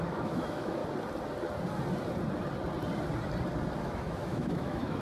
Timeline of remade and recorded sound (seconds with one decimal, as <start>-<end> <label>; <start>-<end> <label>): 0.0-0.8 remade; 0.8-3.8 recorded; 3.8-5.0 remade